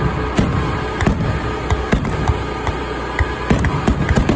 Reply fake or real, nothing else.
real